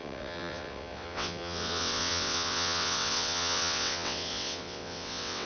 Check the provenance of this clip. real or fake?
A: fake